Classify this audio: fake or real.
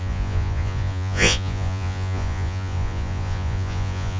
fake